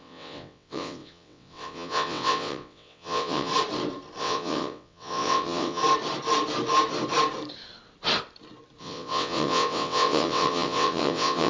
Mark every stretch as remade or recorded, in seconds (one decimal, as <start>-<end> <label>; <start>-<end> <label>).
0.0-3.5 remade; 3.5-4.2 recorded; 4.2-5.8 remade; 5.8-8.8 recorded; 8.8-11.5 remade